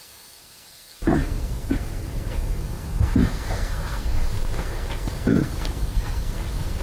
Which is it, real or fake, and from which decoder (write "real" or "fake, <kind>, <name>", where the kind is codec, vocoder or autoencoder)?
fake, codec, SNAC